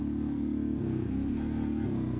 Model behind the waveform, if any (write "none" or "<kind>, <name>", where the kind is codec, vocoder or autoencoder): codec, SNAC